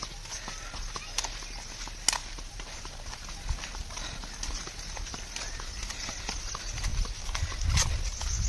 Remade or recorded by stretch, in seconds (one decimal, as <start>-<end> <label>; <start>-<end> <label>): 0.0-2.2 recorded; 2.2-2.9 remade; 2.9-8.5 recorded